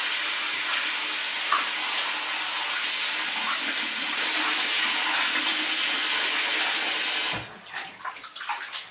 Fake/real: real